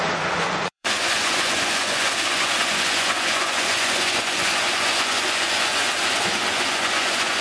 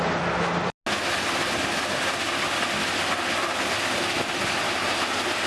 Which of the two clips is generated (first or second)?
first